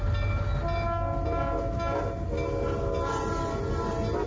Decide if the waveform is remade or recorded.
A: recorded